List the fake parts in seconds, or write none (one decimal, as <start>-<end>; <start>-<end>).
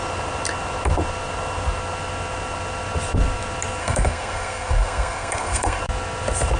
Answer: 3.8-5.8